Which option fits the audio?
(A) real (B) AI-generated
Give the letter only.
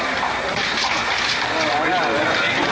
A